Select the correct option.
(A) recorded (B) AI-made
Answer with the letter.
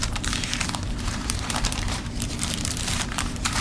B